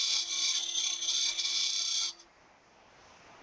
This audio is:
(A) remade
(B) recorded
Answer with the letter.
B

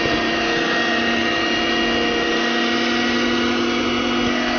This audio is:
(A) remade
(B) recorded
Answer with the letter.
B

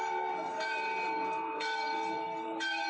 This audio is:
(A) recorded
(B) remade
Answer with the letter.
B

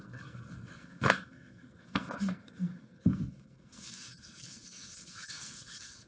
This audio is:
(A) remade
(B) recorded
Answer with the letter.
A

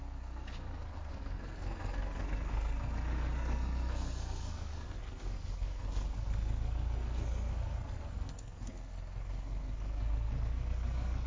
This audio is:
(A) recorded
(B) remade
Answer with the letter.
B